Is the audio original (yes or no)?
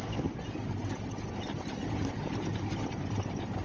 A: yes